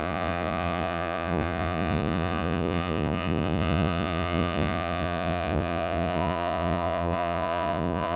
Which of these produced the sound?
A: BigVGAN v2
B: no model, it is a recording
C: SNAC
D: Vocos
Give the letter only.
D